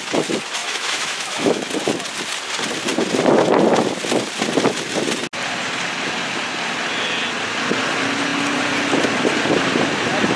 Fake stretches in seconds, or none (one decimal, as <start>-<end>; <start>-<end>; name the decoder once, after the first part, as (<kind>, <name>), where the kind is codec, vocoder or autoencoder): 0.6-1.6 (autoencoder, DAC-VAE)